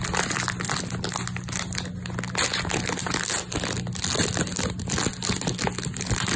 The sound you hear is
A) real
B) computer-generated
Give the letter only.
A